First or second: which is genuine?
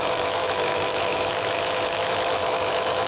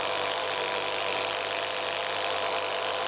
second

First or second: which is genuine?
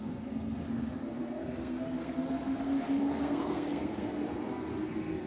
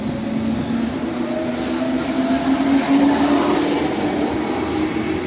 second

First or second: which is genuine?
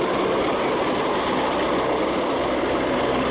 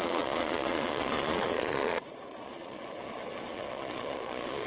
first